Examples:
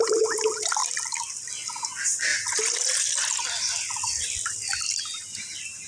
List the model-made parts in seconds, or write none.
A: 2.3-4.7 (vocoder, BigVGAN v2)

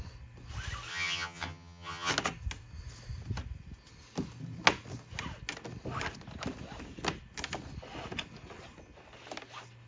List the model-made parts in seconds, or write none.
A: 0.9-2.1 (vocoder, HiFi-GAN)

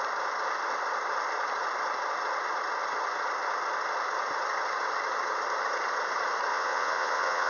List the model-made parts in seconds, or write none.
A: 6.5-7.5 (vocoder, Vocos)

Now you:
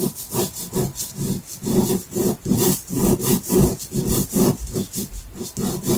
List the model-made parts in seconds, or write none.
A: 0.0-0.9 (vocoder, BigVGAN v2); 2.4-6.0

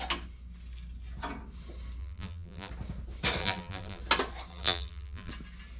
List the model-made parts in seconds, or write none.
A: 2.0-2.7 (vocoder, BigVGAN v2); 3.4-4.0; 4.5-5.3

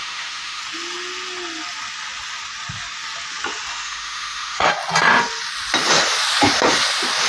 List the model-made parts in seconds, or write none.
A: 0.0-0.6 (autoencoder, DAC-VAE); 3.7-4.7

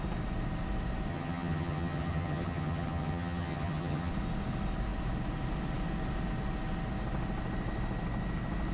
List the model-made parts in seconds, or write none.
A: 1.1-4.1 (vocoder, HiFi-GAN)